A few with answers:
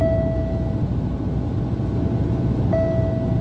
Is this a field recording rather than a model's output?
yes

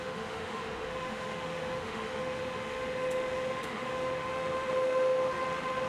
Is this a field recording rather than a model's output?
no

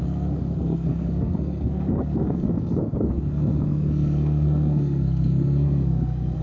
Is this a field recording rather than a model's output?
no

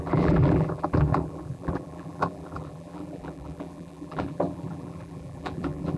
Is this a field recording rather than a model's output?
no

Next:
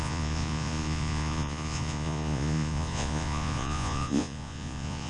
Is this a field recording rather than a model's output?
no